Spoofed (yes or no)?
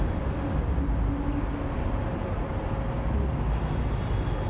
no